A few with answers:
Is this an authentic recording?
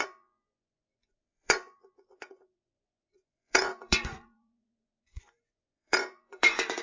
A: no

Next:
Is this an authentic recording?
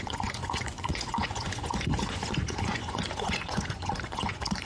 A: no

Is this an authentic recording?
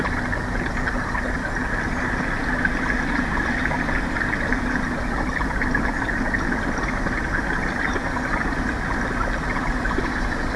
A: yes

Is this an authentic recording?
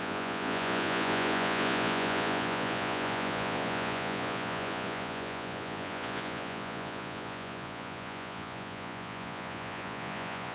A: no